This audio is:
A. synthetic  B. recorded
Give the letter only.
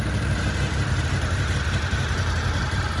A